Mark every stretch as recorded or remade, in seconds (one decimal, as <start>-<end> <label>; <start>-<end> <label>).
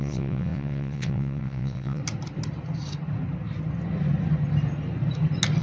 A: 0.0-2.0 remade; 2.0-5.6 recorded